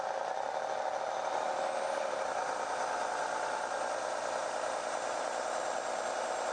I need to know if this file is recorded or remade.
recorded